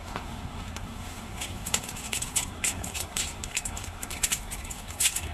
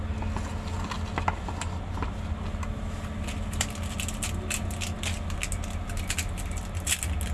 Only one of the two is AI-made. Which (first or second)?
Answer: first